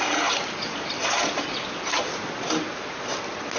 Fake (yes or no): no